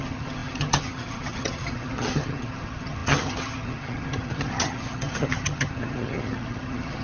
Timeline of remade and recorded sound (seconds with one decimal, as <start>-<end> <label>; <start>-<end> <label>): 0.0-7.0 remade